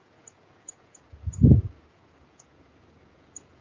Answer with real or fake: fake